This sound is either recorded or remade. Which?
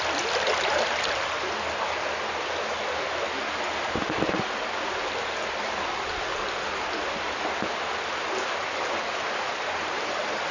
recorded